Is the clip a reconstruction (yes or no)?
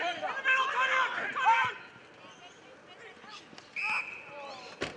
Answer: no